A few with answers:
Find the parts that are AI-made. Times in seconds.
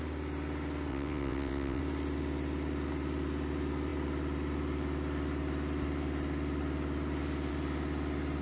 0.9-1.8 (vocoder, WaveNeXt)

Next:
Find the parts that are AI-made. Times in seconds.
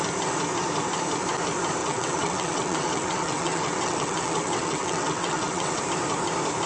1.8-5.8 (vocoder, WaveNeXt)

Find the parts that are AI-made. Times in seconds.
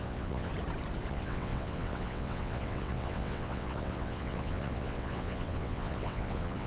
0.0-0.5 (vocoder, WaveNeXt); 1.1-6.7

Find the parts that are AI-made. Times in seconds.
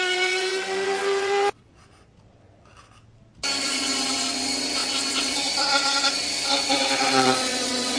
0.0-1.7 (vocoder, WaveNeXt); 3.6-8.0